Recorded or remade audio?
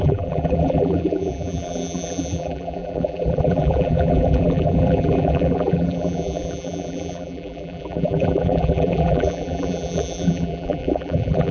remade